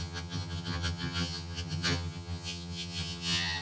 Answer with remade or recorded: remade